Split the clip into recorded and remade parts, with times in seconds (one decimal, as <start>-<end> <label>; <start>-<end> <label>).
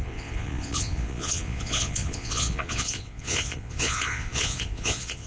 0.0-5.3 remade